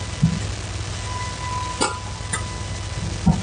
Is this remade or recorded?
recorded